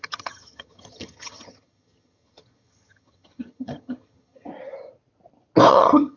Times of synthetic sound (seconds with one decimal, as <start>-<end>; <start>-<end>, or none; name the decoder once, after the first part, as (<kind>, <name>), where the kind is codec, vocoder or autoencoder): 0.0-4.5 (vocoder, HiFi-GAN); 5.7-6.2